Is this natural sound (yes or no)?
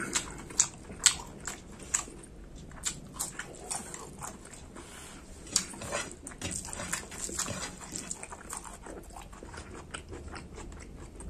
yes